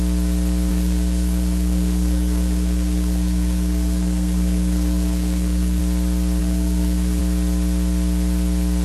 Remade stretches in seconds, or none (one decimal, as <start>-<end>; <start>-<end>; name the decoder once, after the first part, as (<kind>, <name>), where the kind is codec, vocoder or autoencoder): 0.7-5.8 (codec, SNAC); 6.4-7.2